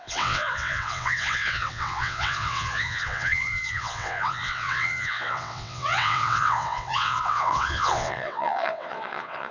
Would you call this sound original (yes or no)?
no